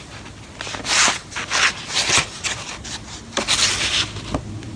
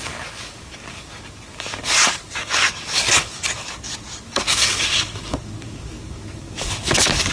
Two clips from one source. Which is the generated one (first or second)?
second